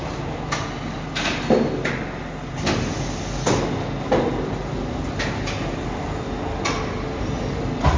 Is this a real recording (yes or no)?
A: yes